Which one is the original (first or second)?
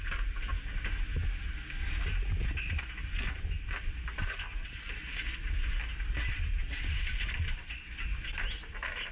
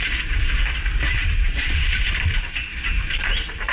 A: first